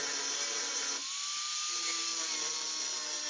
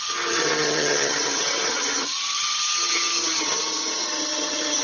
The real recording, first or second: first